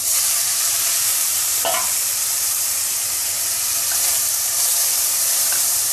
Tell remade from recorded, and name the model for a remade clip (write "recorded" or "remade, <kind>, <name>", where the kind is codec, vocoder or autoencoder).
remade, vocoder, BigVGAN v2